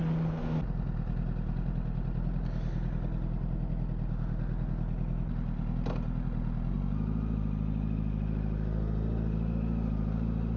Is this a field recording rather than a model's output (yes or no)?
yes